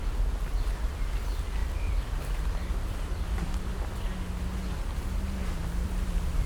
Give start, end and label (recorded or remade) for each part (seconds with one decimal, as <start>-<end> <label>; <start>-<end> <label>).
0.0-1.6 recorded; 1.6-3.6 remade; 3.6-5.4 recorded; 5.4-6.5 remade